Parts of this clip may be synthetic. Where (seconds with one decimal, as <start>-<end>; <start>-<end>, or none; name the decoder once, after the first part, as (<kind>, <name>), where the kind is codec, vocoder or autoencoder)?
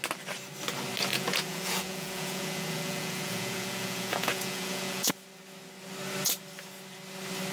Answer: 1.1-5.1 (vocoder, Vocos)